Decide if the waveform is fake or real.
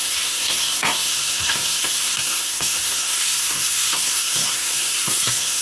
fake